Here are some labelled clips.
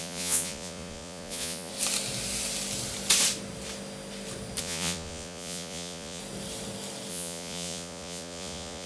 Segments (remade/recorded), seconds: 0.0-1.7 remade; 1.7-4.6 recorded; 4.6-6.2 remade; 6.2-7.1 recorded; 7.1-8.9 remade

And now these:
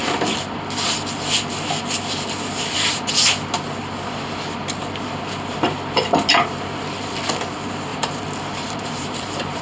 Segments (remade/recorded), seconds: 0.0-7.9 recorded; 7.9-9.6 remade

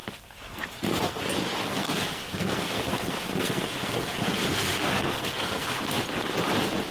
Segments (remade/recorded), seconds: 0.0-1.2 remade; 1.2-1.7 recorded; 1.7-5.8 remade; 5.8-6.9 recorded

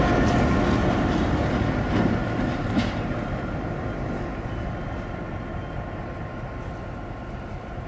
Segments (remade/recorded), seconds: 0.0-0.8 recorded; 0.8-1.3 remade; 1.3-2.2 recorded; 2.2-4.8 remade; 4.8-7.9 recorded

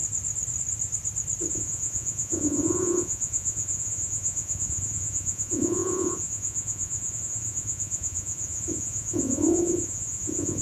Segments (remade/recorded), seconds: 0.0-1.5 recorded; 1.5-10.6 remade

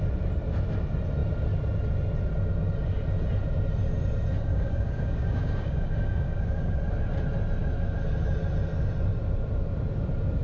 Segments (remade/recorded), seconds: 0.0-4.5 recorded; 4.5-6.8 remade; 6.8-10.4 recorded

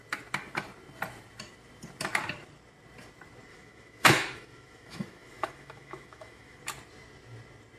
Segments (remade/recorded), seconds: 0.0-3.5 recorded; 3.5-6.6 remade; 6.6-7.8 recorded

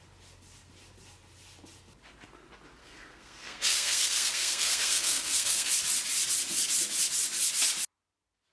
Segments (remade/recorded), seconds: 0.0-2.8 recorded; 2.8-5.7 remade; 5.7-8.5 recorded